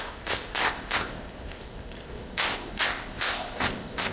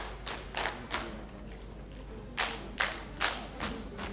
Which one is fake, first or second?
first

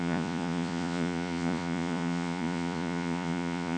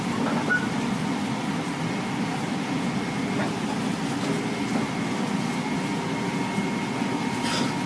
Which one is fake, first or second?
first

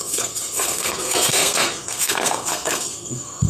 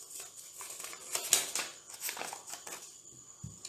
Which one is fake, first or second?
first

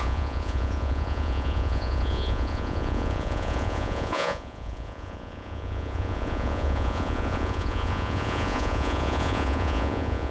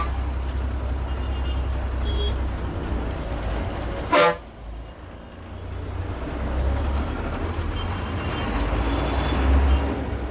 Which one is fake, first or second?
first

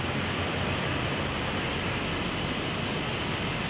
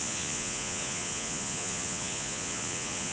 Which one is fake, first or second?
second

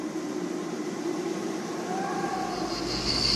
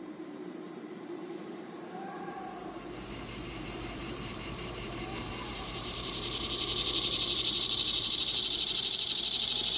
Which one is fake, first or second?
second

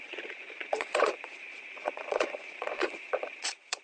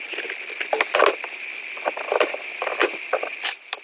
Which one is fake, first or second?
first